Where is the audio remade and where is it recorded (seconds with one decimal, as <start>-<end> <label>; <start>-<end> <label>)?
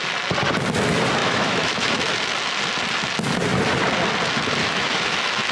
0.0-1.2 recorded; 1.2-2.1 remade; 2.1-4.6 recorded; 4.6-5.5 remade